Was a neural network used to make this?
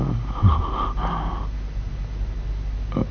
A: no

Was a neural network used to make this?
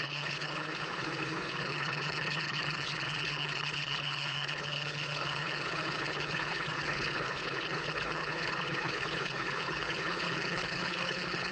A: yes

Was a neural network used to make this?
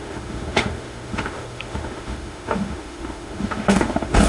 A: yes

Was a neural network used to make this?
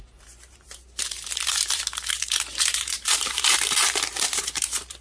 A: yes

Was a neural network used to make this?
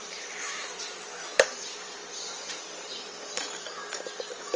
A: yes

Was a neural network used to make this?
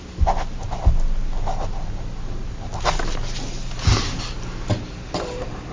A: no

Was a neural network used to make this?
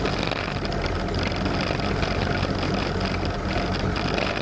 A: no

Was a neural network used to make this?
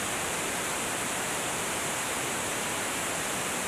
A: yes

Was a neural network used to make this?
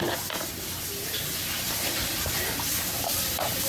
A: yes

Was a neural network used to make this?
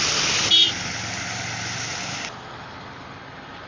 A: no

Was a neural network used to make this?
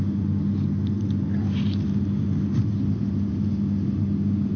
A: no